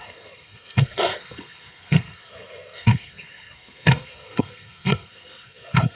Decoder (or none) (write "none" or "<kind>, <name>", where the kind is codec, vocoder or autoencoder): codec, SNAC